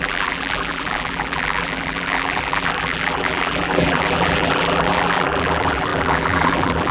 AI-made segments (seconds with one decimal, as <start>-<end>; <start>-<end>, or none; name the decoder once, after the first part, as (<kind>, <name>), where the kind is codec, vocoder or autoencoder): 0.0-6.9 (vocoder, BigVGAN v2)